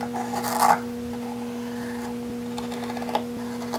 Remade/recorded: recorded